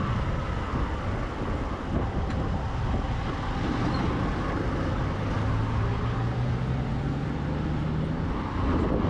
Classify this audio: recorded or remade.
recorded